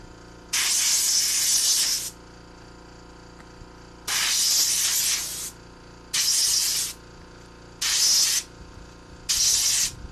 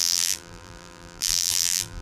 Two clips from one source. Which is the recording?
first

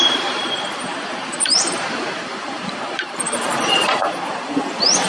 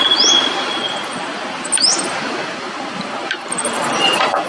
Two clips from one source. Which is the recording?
second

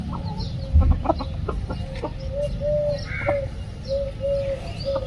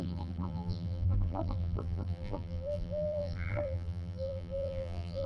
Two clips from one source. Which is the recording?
first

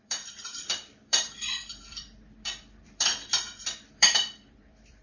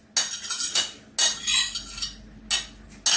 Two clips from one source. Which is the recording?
second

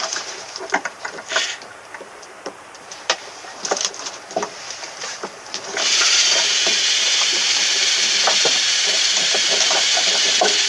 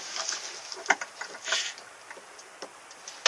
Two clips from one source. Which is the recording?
second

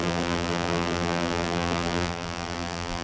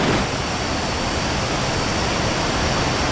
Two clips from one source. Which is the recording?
second